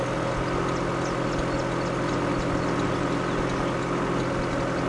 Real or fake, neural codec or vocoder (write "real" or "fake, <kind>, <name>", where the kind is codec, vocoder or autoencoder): real